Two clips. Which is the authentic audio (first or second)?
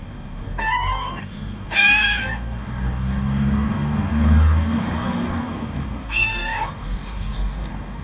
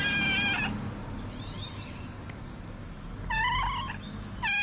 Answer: second